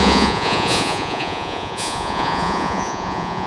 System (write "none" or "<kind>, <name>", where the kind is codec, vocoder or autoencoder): vocoder, Vocos